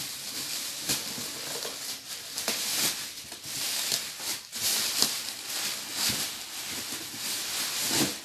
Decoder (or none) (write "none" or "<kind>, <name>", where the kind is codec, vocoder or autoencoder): none